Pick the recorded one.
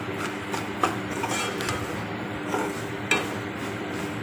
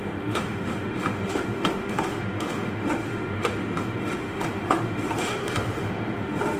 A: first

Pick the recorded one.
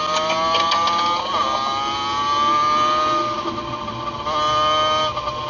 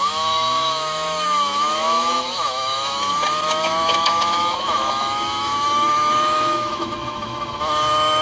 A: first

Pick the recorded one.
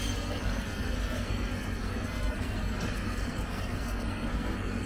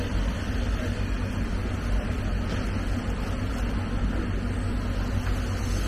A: second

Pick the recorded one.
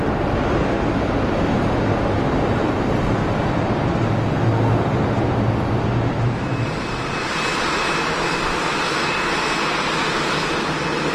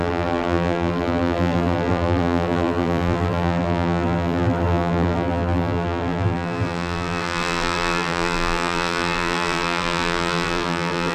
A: first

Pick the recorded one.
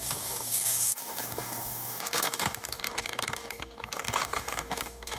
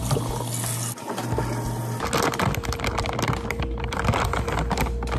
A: second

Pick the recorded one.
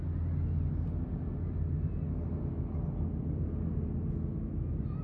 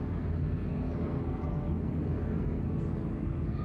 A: first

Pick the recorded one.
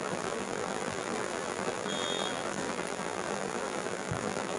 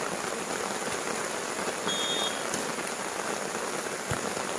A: second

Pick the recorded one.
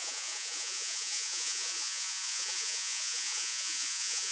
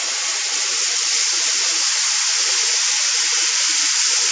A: second